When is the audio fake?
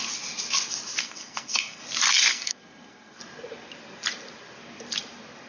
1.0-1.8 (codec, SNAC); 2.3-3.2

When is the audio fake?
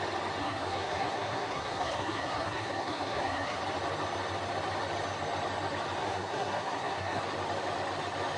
0.4-3.6 (codec, SNAC); 6.0-7.2